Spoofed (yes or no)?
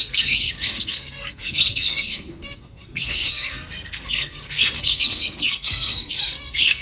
yes